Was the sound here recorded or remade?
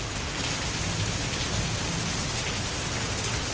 recorded